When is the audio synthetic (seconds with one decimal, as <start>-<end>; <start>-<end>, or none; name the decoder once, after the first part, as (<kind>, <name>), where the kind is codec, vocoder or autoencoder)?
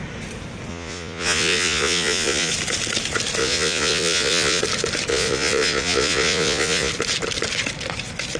0.7-2.5 (vocoder, Vocos); 3.4-4.6; 5.1-6.9